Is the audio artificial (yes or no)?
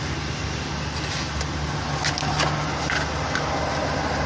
no